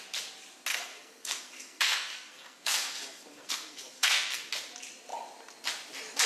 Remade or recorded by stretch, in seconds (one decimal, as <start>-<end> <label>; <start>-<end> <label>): 0.0-0.7 recorded; 0.7-4.5 remade; 4.5-6.3 recorded